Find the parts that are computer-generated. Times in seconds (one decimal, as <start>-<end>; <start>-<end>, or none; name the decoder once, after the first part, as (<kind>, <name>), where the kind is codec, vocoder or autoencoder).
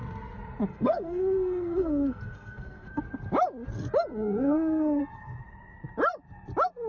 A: 0.7-3.0 (codec, SNAC); 4.1-5.0